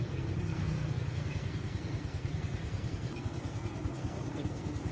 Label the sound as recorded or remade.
remade